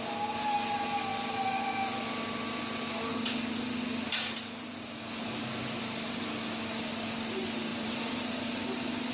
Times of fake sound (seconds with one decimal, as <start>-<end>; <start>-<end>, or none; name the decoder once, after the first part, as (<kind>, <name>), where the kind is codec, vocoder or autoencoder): 7.7-9.1 (vocoder, BigVGAN v2)